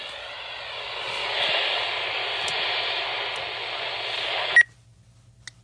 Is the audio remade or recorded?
recorded